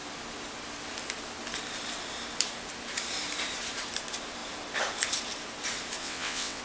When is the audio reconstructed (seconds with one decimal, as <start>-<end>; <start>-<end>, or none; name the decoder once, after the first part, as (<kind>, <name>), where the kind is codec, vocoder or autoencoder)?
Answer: 6.0-6.6 (vocoder, WaveNeXt)